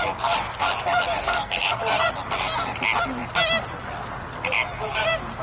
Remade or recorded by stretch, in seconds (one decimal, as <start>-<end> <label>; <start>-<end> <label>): 0.0-1.2 recorded; 1.2-1.8 remade; 1.8-5.4 recorded